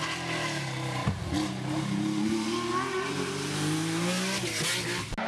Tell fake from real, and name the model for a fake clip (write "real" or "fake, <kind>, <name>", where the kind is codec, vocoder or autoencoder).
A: real